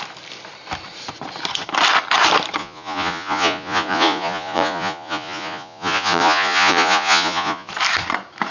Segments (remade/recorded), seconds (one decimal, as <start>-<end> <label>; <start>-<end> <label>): 0.0-2.6 recorded; 2.6-7.7 remade; 7.7-8.5 recorded